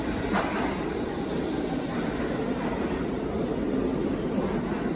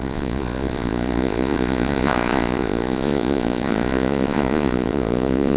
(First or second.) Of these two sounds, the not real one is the second